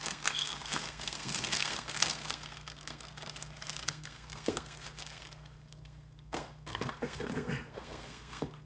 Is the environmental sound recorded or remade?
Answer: remade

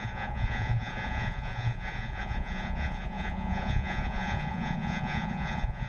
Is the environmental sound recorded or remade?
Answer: remade